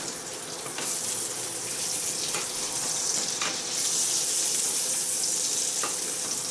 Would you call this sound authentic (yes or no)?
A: yes